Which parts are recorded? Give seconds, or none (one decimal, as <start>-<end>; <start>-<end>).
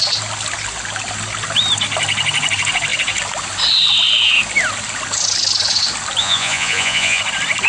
0.0-6.2; 7.2-7.7